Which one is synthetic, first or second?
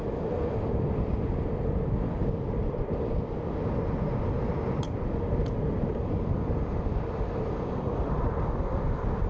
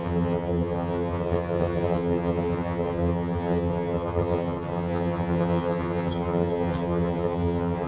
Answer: second